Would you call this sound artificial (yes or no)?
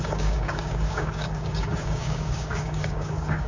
yes